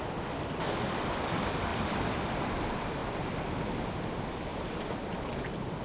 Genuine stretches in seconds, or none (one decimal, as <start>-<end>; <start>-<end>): 0.0-5.8